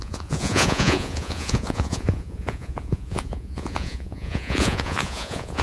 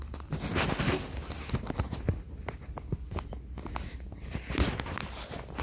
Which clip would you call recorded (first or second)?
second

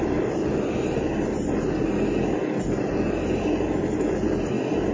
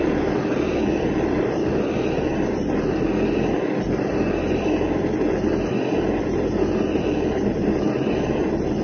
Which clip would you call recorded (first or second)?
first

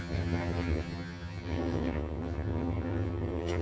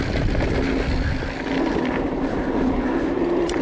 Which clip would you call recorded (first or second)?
second